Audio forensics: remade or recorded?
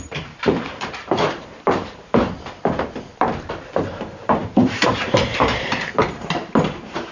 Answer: remade